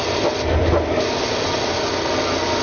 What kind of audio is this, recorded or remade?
recorded